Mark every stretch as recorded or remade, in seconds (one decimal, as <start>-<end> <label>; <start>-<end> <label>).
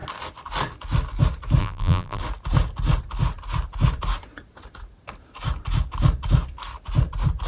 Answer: 0.0-1.6 recorded; 1.6-2.2 remade; 2.2-7.5 recorded